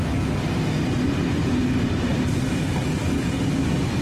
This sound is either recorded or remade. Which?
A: recorded